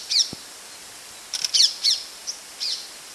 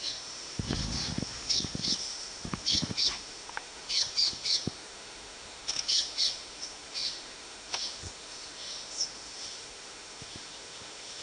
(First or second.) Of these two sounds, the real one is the first